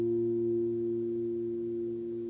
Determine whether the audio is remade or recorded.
recorded